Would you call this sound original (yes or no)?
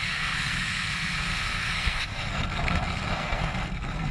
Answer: no